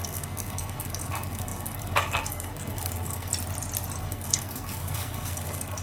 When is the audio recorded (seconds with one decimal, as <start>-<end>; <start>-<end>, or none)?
3.3-4.0